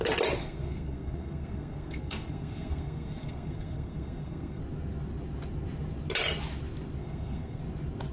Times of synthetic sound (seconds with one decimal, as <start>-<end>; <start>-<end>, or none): 0.4-4.6; 7.0-7.6